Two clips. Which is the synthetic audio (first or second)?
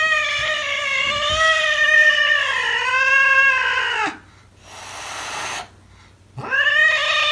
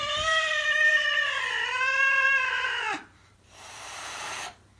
second